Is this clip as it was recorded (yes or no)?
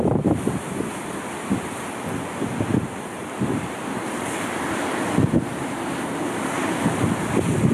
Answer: yes